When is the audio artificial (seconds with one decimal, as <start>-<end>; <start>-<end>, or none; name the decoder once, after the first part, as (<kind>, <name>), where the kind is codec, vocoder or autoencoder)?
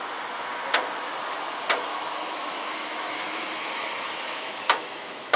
1.9-5.4 (autoencoder, DAC-VAE)